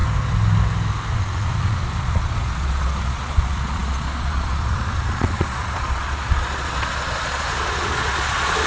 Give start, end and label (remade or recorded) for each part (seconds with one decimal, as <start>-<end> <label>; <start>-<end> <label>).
0.0-1.1 recorded; 1.1-8.7 remade